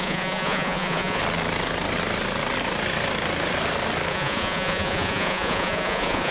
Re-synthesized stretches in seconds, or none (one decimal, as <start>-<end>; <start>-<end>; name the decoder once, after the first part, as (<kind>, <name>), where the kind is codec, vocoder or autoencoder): 0.0-1.2 (vocoder, Vocos); 4.1-6.3